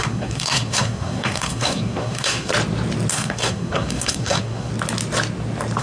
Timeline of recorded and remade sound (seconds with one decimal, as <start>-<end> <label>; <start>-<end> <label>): 0.0-2.5 remade; 2.5-3.1 recorded; 3.1-4.7 remade; 4.7-5.8 recorded

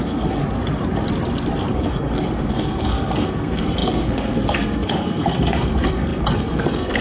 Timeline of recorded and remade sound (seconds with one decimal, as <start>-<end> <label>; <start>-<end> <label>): 0.0-0.4 remade; 0.4-1.7 recorded; 1.7-7.0 remade

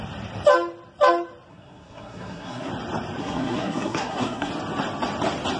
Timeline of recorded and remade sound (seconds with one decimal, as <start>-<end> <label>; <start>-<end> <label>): 0.0-1.5 recorded; 1.5-2.7 remade; 2.7-3.2 recorded; 3.2-4.5 remade; 4.5-5.6 recorded

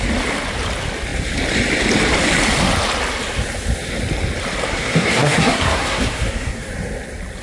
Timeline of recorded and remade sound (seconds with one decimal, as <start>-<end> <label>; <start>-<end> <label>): 0.0-4.7 recorded; 4.7-6.7 remade; 6.7-7.4 recorded

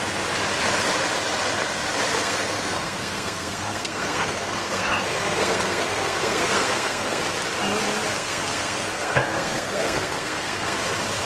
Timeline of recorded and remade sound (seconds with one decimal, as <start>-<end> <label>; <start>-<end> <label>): 0.0-2.1 recorded; 2.1-7.2 remade; 7.2-8.1 recorded; 8.1-10.8 remade; 10.8-11.3 recorded

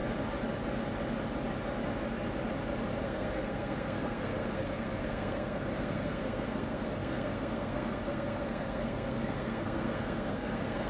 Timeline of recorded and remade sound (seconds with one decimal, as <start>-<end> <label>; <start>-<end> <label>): 0.0-3.0 recorded; 3.0-10.9 remade

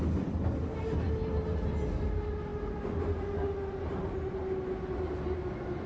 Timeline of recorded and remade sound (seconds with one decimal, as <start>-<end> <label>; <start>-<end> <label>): 0.0-5.9 recorded